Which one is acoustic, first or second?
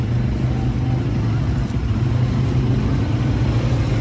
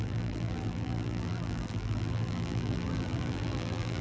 first